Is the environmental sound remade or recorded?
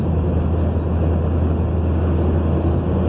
recorded